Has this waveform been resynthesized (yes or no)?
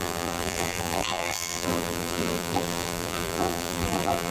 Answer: yes